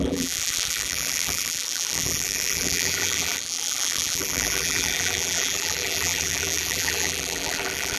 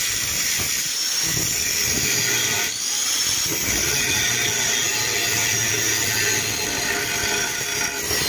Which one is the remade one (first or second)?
first